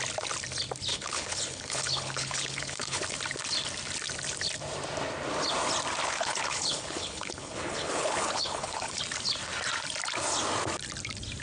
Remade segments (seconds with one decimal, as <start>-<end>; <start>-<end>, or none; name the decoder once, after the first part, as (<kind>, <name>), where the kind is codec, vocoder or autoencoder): 0.9-3.0 (codec, HILCodec); 6.0-9.0